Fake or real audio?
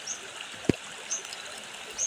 real